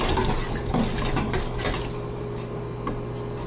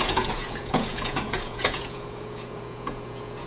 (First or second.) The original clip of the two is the first